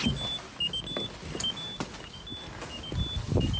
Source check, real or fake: real